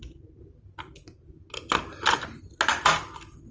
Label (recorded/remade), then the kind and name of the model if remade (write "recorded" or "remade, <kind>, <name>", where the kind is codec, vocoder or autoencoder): recorded